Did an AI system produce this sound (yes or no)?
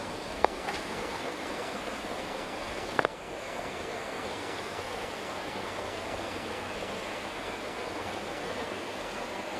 yes